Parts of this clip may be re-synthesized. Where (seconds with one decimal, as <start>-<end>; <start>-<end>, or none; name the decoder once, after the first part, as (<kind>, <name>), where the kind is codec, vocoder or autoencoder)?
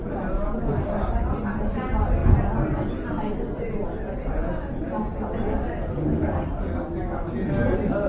none